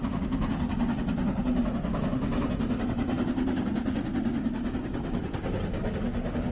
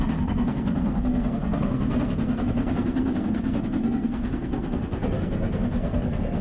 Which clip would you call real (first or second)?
first